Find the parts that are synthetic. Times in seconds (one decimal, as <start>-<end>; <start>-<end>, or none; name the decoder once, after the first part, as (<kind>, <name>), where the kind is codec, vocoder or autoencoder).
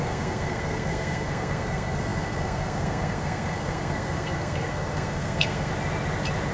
0.0-5.7 (codec, SNAC)